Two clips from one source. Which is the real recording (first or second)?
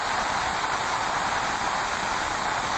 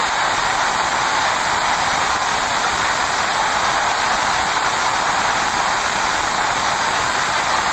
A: second